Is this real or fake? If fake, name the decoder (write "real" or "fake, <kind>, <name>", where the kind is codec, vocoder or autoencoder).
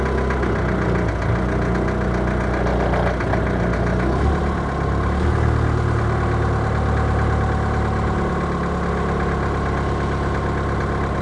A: real